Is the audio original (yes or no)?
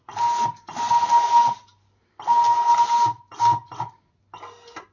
yes